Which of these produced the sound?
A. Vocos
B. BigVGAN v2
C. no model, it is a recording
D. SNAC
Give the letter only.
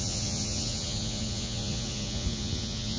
A